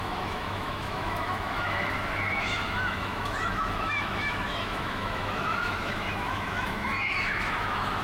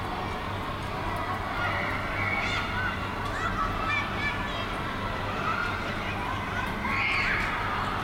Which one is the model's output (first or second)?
first